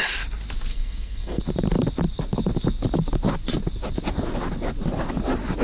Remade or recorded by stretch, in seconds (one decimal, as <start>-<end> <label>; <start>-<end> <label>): 0.0-0.7 recorded; 0.7-1.4 remade; 1.4-5.6 recorded

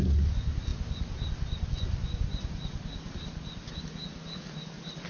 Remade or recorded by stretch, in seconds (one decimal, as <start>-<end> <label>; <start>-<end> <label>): 0.0-5.1 recorded

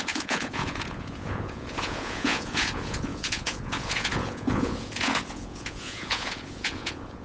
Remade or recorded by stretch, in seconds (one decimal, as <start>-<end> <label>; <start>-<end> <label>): 0.0-7.2 remade

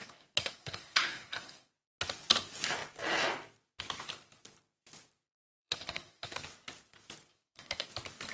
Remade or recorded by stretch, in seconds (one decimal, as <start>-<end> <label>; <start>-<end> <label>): 0.0-1.7 remade; 1.7-5.6 recorded; 5.6-6.4 remade; 6.4-7.3 recorded; 7.3-7.9 remade; 7.9-8.3 recorded

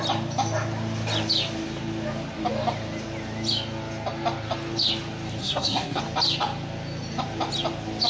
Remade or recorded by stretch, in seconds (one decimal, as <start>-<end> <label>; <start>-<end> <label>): 0.0-5.4 recorded; 5.4-6.0 remade; 6.0-8.1 recorded

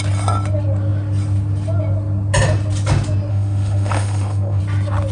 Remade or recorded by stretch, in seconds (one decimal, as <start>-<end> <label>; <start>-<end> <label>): 0.0-3.3 recorded; 3.3-4.6 remade; 4.6-5.1 recorded